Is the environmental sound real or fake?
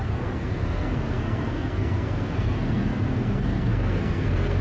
fake